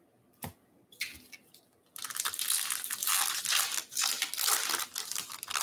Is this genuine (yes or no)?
yes